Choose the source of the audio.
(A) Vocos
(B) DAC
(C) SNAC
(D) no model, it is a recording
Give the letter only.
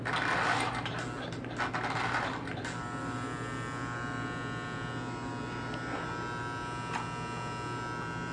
D